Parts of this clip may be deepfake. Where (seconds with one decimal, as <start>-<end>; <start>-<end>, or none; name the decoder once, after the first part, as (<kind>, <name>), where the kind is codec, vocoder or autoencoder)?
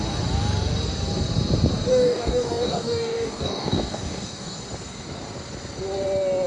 1.9-4.6 (codec, DAC)